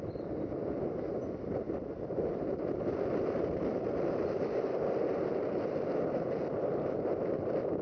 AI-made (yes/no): no